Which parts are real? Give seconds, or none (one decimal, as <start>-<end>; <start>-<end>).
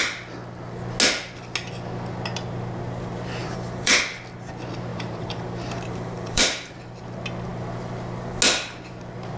0.0-3.4; 4.0-4.9; 6.7-9.4